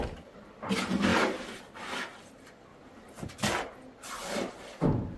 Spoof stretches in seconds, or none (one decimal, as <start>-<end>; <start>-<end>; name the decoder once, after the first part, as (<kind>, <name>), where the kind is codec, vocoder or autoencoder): none